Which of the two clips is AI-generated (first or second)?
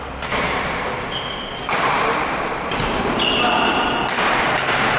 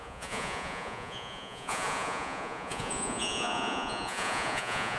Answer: second